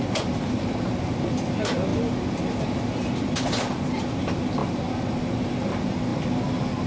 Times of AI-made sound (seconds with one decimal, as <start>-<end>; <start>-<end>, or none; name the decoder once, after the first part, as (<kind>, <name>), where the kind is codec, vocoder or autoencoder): none